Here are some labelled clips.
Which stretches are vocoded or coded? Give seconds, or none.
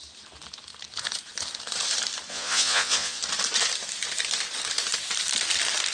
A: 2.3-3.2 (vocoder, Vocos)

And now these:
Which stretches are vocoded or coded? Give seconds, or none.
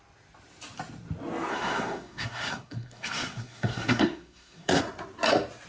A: 1.5-4.8 (codec, SNAC)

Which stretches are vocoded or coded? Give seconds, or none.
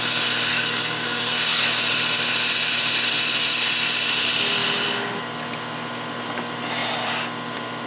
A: 0.5-1.6 (codec, SNAC)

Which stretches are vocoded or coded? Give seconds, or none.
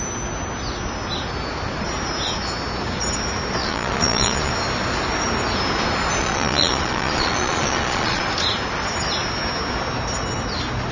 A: 3.6-4.5 (vocoder, Vocos); 6.2-8.2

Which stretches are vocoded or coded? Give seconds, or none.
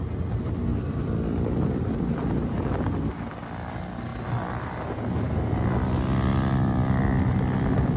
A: 0.7-2.0 (vocoder, BigVGAN v2); 6.3-7.0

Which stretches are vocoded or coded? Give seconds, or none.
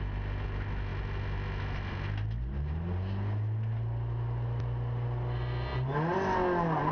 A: none